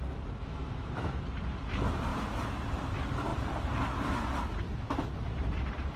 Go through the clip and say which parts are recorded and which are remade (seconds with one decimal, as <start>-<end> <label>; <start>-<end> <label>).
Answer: 0.0-0.4 recorded; 0.4-1.2 remade; 1.2-6.0 recorded